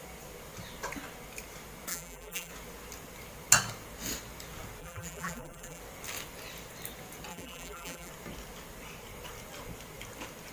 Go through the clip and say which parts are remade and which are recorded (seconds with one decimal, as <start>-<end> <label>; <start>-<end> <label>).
0.0-1.9 recorded; 1.9-2.5 remade; 2.5-4.8 recorded; 4.8-5.8 remade; 5.8-7.3 recorded; 7.3-8.1 remade; 8.1-10.5 recorded